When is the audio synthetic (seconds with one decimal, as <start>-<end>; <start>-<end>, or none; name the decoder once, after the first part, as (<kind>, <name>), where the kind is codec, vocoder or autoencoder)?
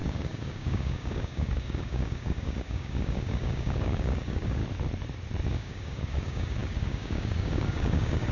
0.0-4.6 (codec, DAC); 5.5-8.3